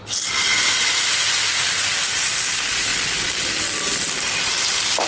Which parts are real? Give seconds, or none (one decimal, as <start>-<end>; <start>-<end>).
0.0-5.1